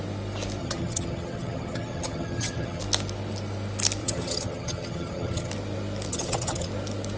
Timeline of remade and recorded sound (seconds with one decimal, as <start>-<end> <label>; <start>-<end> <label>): 0.0-0.6 recorded; 0.6-2.8 remade; 2.8-4.0 recorded; 4.0-5.5 remade; 5.5-6.1 recorded; 6.1-6.7 remade; 6.7-7.2 recorded